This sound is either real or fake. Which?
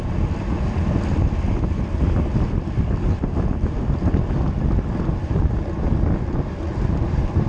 real